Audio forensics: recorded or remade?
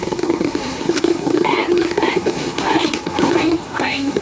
remade